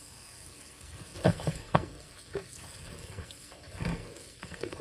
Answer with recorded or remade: remade